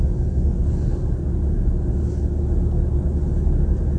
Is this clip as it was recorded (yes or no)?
yes